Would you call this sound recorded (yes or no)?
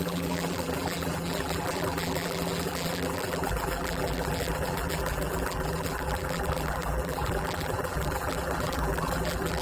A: no